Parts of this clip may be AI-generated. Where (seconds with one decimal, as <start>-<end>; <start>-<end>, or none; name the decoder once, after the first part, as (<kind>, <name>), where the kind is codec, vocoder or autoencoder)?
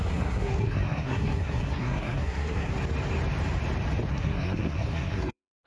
0.0-2.7 (codec, SNAC); 4.1-5.7